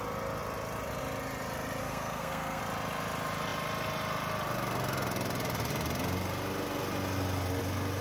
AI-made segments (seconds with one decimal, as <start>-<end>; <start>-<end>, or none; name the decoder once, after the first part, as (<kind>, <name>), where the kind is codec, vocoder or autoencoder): 1.8-2.6 (codec, SNAC)